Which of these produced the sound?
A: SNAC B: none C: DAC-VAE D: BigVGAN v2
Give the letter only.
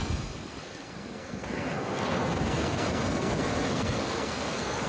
A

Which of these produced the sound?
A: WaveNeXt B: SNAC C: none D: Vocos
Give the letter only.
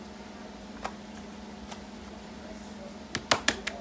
C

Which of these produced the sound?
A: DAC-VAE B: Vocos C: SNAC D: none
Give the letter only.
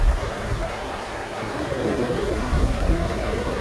C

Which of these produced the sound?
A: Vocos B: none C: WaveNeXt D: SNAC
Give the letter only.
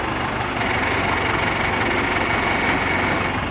B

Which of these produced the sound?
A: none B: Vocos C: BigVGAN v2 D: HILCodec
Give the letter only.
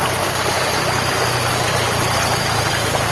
A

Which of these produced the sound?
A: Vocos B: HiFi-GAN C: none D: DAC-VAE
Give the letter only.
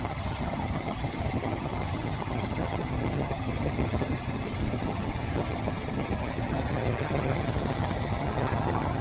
B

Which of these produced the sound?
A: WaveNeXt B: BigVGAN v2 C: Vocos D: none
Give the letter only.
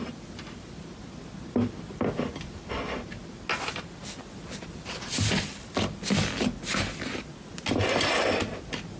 D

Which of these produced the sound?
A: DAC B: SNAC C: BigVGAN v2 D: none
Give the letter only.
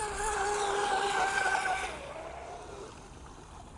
D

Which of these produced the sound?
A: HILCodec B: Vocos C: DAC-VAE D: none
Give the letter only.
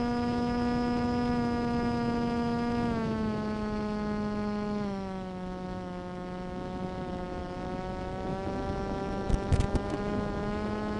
C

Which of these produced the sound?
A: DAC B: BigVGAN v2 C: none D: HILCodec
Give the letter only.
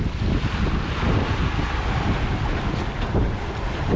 C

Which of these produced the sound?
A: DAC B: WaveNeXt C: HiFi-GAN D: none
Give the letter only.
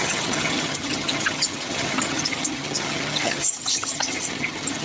C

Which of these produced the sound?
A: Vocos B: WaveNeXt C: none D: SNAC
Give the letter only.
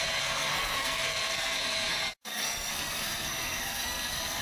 D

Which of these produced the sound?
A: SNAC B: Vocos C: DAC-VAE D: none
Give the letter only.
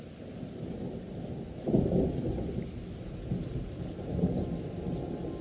D